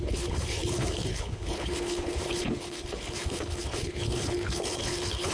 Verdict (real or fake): fake